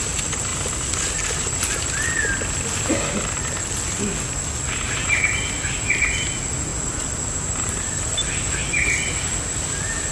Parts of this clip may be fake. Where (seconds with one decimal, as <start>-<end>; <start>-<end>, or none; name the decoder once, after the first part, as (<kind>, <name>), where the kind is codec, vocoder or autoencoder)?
none